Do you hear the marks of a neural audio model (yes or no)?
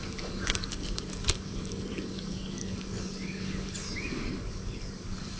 yes